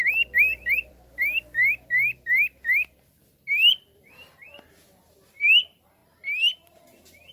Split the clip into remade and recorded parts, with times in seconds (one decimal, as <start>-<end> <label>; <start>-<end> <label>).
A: 0.0-7.3 recorded